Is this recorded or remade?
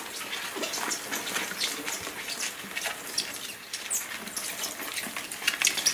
recorded